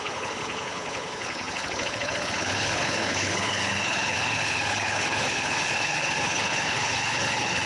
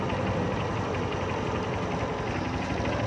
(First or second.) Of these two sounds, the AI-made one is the first